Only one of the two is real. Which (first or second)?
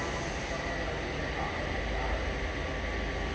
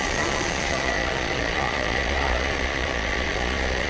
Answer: first